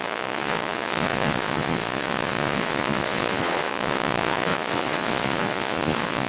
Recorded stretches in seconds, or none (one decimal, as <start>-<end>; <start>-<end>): none

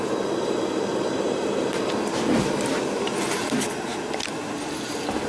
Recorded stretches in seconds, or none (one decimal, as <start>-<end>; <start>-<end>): 0.0-5.3

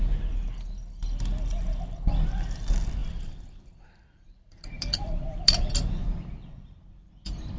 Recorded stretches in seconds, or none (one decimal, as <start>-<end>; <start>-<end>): 0.0-3.0; 7.1-7.6

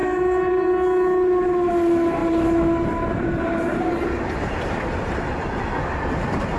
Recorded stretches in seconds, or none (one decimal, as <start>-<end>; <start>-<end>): 0.7-2.2; 5.3-6.6

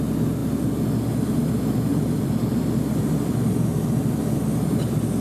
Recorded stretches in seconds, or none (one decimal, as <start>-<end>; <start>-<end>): 0.0-1.9; 4.2-5.2

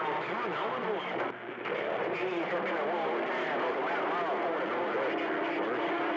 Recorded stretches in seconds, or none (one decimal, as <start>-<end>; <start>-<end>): 0.0-2.0; 2.5-6.2

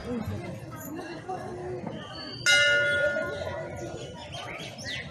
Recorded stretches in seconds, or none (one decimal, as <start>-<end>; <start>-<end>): 0.0-0.6; 1.6-5.1

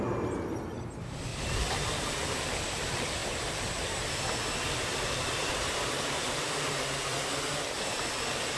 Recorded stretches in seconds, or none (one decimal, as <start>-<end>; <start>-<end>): 0.0-1.3; 1.9-3.2; 4.1-4.9; 7.2-8.6